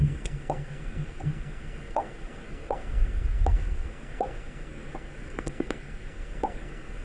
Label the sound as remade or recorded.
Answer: remade